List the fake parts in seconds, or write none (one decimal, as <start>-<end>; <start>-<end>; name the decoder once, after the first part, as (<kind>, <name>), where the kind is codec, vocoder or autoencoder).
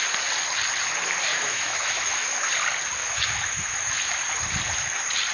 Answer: 1.3-2.4 (autoencoder, DAC-VAE); 3.0-4.0